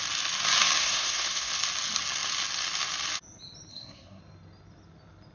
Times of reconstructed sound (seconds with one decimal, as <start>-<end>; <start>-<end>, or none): 0.8-1.5; 3.7-4.2